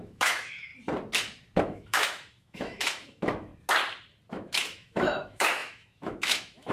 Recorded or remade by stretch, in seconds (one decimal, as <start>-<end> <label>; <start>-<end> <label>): 0.0-0.7 remade; 0.7-1.6 recorded; 1.6-3.5 remade; 3.5-4.3 recorded; 4.3-6.7 remade

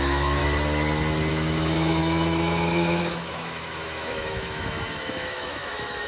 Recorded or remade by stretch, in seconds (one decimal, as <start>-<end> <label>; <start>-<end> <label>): 0.0-0.4 remade; 0.4-1.3 recorded; 1.3-6.1 remade

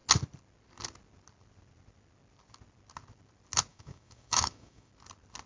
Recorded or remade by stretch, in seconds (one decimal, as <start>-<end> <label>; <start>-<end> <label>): 0.0-3.7 recorded; 3.7-4.9 remade; 4.9-5.5 recorded

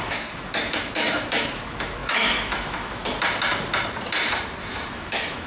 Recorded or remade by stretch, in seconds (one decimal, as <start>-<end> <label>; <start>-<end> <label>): 0.0-3.0 remade; 3.0-4.7 recorded; 4.7-5.5 remade

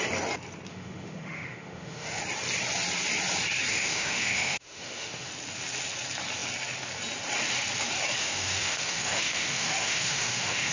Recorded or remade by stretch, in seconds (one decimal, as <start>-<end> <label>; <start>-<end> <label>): 0.0-0.7 recorded; 0.7-2.2 remade; 2.2-3.7 recorded; 3.7-5.3 remade; 5.3-8.2 recorded; 8.2-10.7 remade